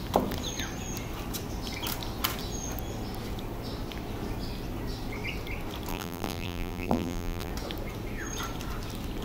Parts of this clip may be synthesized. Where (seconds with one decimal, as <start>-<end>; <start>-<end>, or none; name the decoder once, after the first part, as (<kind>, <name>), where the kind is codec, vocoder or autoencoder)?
5.9-7.5 (vocoder, BigVGAN v2)